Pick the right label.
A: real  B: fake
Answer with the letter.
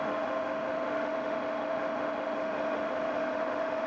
B